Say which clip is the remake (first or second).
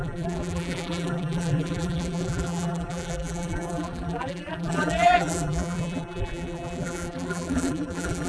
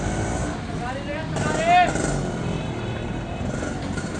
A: first